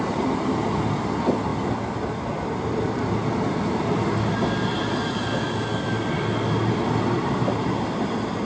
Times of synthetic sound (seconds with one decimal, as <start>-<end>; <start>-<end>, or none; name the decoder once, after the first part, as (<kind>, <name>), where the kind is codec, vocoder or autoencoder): none